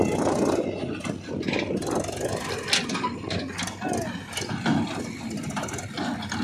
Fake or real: real